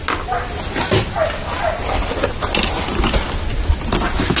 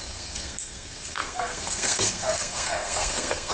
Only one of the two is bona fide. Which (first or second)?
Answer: first